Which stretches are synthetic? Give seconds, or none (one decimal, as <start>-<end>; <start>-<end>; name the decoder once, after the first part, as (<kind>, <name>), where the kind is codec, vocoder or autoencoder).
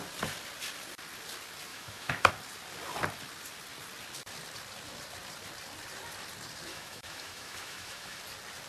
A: 1.7-2.3 (autoencoder, DAC-VAE); 6.7-8.2